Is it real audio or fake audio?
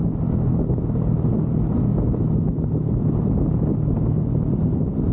real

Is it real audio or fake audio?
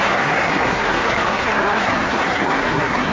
fake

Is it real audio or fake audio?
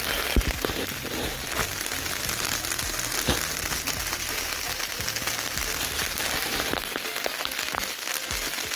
real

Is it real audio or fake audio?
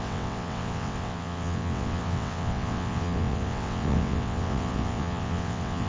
fake